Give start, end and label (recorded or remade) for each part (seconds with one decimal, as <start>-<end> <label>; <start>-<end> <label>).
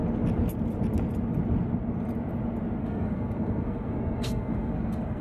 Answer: 0.0-2.8 recorded; 2.8-5.2 remade